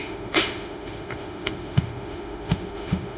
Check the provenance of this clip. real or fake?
fake